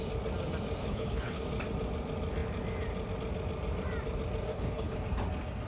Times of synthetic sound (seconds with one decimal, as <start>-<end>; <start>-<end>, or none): 0.8-1.4; 4.5-5.0